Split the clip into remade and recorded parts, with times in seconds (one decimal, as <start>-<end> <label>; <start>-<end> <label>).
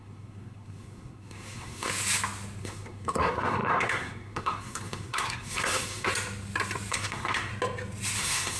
0.0-1.9 remade; 1.9-2.6 recorded; 2.6-6.1 remade; 6.1-6.9 recorded; 6.9-7.5 remade; 7.5-8.2 recorded; 8.2-8.6 remade